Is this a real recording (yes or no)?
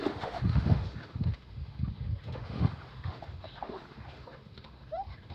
no